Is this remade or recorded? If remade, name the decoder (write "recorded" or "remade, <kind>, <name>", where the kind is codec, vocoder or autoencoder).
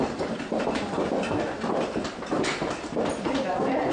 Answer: recorded